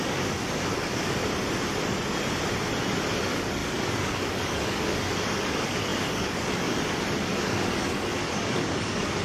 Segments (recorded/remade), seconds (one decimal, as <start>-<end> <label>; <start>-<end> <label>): 0.0-1.2 remade; 1.2-3.2 recorded; 3.2-9.2 remade